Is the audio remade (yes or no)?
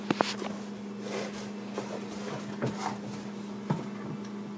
no